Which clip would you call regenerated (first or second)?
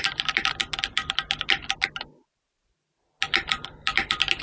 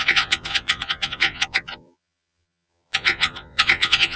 second